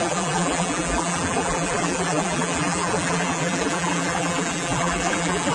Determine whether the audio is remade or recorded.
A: remade